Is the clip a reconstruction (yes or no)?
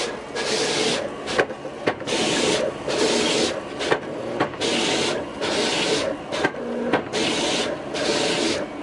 no